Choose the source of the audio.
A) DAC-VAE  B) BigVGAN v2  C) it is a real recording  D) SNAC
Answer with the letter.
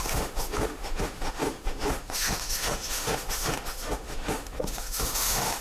A